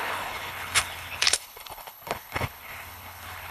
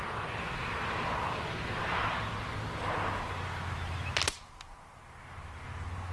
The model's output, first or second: first